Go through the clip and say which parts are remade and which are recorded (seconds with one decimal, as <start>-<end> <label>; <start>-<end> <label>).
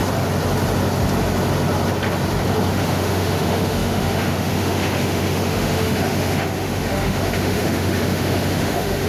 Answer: 0.0-2.7 recorded; 2.7-9.1 remade